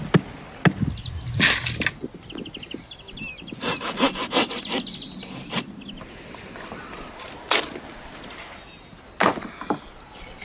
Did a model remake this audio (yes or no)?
no